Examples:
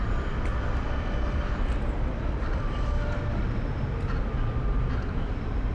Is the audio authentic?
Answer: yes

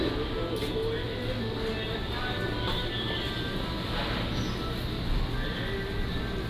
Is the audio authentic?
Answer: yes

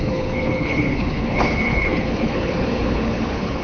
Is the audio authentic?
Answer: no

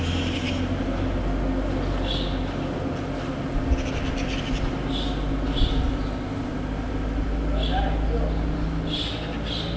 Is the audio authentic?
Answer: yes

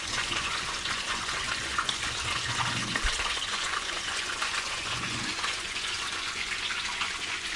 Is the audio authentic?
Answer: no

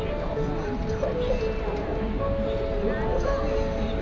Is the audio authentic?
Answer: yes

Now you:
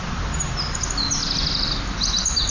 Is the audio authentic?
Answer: yes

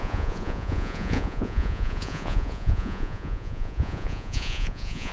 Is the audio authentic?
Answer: no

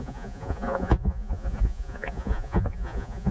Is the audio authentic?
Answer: no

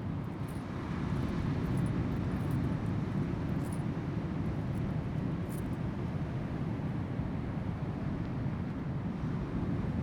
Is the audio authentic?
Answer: yes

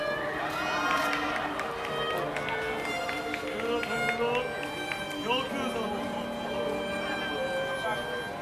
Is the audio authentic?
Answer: yes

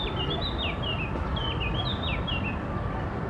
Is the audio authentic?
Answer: yes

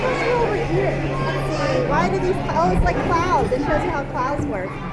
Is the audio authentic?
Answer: yes